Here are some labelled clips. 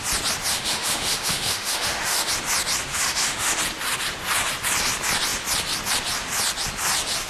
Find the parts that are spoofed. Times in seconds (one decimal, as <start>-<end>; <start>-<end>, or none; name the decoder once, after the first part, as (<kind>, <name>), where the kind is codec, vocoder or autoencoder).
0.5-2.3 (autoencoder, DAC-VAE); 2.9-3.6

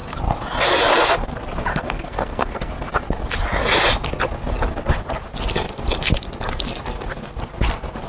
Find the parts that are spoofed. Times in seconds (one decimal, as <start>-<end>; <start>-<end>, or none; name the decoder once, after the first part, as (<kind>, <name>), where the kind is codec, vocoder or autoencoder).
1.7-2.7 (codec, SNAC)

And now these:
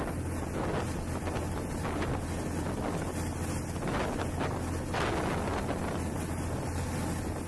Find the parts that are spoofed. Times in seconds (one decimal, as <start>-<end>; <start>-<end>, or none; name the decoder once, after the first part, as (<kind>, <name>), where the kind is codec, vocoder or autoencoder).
none